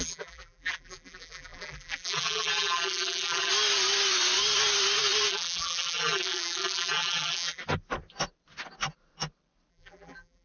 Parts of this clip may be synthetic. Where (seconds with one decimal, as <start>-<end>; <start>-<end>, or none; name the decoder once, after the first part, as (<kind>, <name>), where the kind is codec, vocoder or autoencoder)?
0.0-3.5 (vocoder, BigVGAN v2); 5.3-7.6; 9.7-10.4